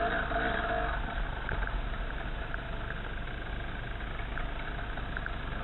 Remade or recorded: recorded